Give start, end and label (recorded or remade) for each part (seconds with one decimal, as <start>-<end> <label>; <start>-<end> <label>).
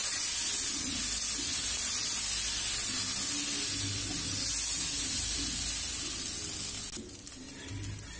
0.0-8.2 recorded